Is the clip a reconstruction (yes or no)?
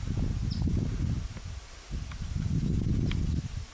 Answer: no